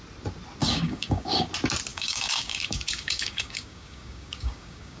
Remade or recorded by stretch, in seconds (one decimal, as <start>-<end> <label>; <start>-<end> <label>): 0.0-0.6 recorded; 0.6-1.5 remade; 1.5-1.9 recorded; 1.9-5.0 remade

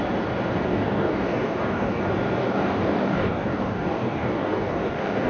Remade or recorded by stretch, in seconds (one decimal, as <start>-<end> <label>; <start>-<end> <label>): 0.0-0.7 recorded; 0.7-2.0 remade; 2.0-2.4 recorded; 2.4-5.3 remade